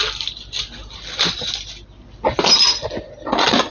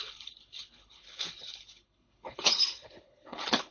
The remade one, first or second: second